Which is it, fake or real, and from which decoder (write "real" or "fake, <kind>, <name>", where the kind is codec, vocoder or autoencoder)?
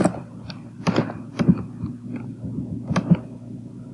real